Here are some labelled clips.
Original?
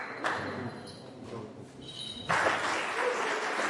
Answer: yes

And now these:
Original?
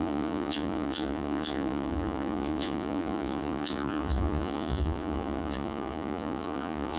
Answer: no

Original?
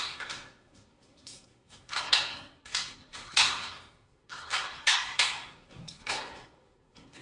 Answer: no